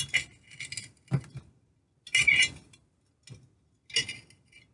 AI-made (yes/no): no